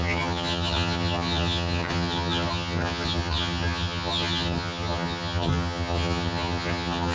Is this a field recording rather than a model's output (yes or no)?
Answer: no